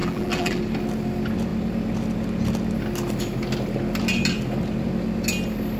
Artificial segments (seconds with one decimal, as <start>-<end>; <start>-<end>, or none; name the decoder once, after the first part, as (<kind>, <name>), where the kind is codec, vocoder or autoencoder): 0.0-0.6 (vocoder, BigVGAN v2)